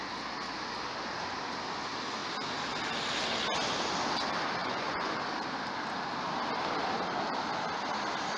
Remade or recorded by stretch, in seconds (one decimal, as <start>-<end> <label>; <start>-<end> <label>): 0.0-4.6 recorded; 4.6-5.2 remade; 5.2-8.4 recorded